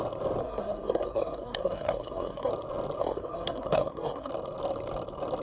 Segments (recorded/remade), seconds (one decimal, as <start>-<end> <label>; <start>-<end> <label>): 0.0-0.4 recorded; 0.4-2.5 remade; 2.5-3.0 recorded; 3.0-4.3 remade; 4.3-5.4 recorded